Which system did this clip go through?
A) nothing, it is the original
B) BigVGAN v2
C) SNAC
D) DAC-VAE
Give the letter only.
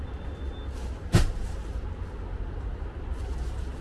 A